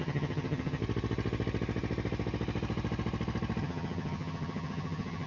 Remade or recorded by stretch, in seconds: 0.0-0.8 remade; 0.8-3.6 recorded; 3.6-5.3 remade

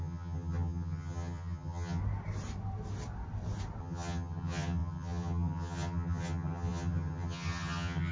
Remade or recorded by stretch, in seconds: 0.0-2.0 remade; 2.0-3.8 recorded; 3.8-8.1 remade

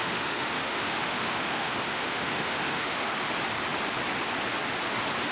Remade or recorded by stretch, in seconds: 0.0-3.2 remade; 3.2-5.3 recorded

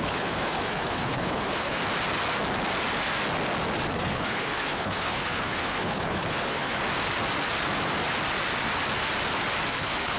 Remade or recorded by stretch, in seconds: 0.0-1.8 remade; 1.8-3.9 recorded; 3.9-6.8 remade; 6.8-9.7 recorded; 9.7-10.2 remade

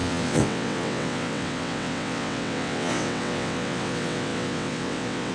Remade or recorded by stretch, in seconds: 0.0-5.3 remade